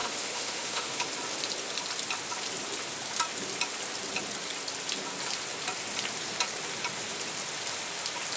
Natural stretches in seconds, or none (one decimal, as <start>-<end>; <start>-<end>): 1.1-8.4